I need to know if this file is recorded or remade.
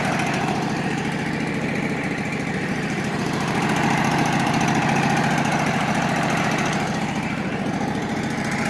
remade